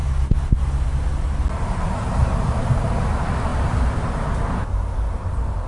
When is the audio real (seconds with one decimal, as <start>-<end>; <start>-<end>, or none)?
0.0-5.7